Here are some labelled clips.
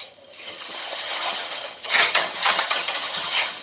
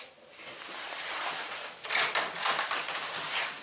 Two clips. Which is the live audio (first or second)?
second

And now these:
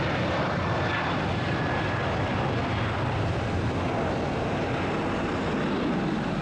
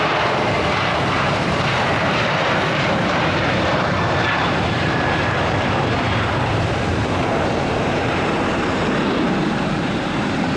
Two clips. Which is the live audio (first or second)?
first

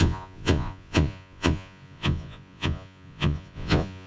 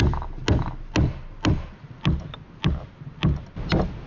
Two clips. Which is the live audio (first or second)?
second